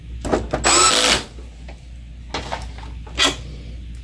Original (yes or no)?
yes